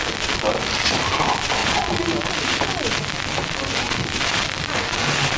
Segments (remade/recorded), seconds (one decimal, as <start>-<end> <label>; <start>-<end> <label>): 0.0-5.4 recorded